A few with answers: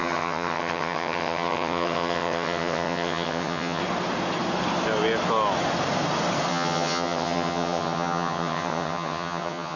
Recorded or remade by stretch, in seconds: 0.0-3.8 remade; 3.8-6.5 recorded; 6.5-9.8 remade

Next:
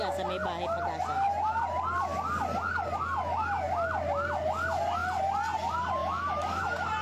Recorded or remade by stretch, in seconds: 0.0-6.0 recorded; 6.0-6.6 remade; 6.6-7.0 recorded

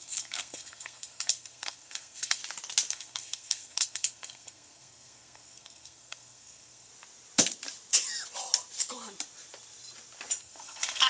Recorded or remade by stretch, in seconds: 0.0-2.4 remade; 2.4-2.9 recorded; 2.9-6.9 remade; 6.9-10.4 recorded; 10.4-11.1 remade

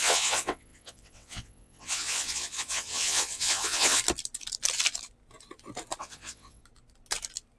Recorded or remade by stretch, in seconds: 0.0-4.0 remade; 4.0-6.0 recorded; 6.0-6.6 remade; 6.6-7.6 recorded

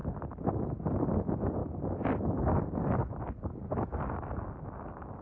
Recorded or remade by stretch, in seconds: 0.0-5.2 recorded

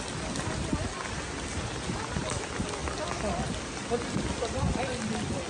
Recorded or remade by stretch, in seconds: 0.0-5.5 recorded

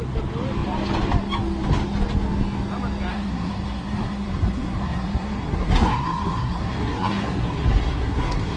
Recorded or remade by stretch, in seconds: 0.0-3.1 recorded; 3.1-8.6 remade

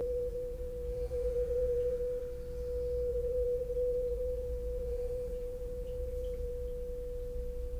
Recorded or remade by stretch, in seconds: 0.0-2.2 remade; 2.2-3.1 recorded; 3.1-6.5 remade; 6.5-7.8 recorded